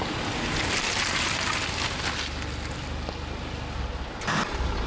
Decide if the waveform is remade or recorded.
recorded